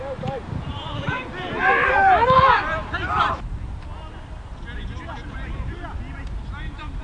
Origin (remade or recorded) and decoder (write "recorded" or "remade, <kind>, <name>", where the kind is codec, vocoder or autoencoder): recorded